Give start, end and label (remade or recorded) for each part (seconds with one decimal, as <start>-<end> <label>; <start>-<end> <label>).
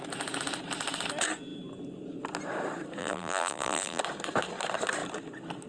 0.0-3.0 recorded; 3.0-4.0 remade; 4.0-5.7 recorded